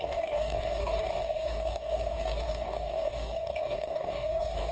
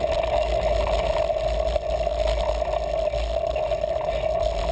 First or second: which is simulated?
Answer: first